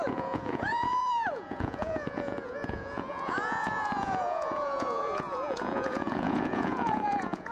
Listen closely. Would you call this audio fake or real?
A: fake